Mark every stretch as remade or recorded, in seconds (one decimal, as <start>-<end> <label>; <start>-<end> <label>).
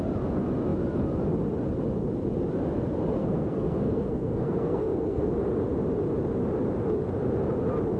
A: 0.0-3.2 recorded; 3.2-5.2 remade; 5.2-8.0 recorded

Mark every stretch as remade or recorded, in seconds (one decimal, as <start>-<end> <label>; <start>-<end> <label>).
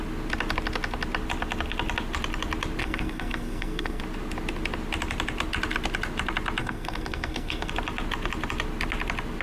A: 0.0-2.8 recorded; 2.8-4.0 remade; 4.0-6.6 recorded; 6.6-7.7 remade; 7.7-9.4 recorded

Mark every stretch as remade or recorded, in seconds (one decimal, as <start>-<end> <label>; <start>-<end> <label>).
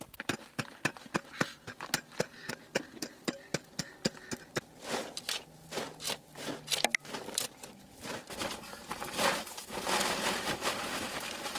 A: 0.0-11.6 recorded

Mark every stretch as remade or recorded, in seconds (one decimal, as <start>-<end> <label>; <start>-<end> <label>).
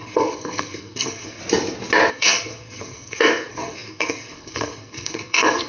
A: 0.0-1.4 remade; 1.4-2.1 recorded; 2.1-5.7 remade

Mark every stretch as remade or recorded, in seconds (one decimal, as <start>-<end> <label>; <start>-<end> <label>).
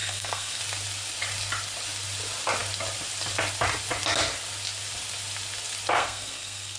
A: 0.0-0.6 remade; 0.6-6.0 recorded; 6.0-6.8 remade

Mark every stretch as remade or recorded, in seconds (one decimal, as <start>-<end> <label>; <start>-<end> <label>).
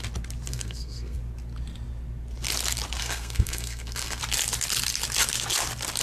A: 0.0-0.5 recorded; 0.5-1.2 remade; 1.2-3.0 recorded; 3.0-4.2 remade; 4.2-6.0 recorded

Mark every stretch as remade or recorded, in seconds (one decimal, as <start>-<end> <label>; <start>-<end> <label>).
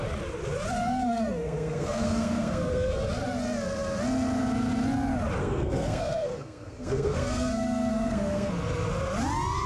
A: 0.0-0.8 recorded; 0.8-3.0 remade; 3.0-5.4 recorded; 5.4-8.5 remade; 8.5-9.7 recorded